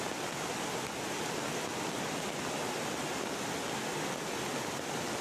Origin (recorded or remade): recorded